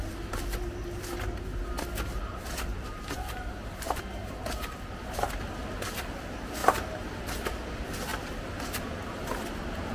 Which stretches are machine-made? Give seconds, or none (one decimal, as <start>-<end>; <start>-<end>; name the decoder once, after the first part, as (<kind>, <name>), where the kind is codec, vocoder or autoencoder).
2.7-4.0 (vocoder, BigVGAN v2)